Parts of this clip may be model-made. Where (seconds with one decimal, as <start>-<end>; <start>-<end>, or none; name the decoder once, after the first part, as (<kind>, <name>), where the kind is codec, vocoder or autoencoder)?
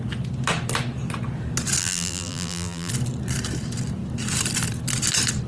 1.8-2.9 (vocoder, BigVGAN v2)